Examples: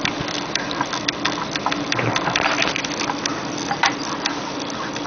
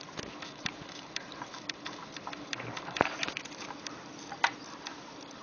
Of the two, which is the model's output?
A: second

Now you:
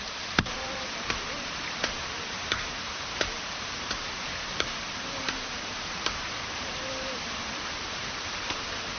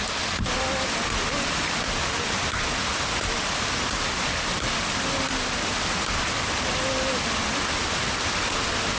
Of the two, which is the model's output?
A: first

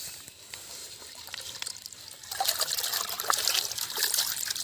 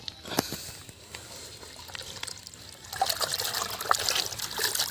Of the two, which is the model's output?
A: first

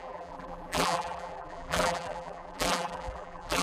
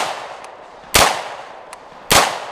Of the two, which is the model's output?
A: first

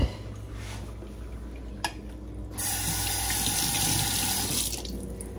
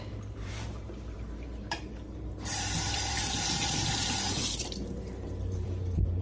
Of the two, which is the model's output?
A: second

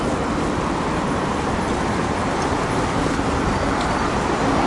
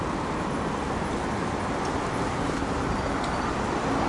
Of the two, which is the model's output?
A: first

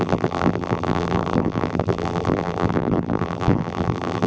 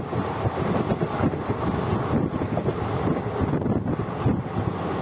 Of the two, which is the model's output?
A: first